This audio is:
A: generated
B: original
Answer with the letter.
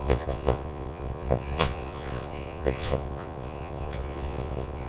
A